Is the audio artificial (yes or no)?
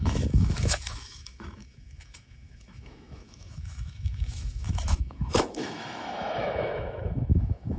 yes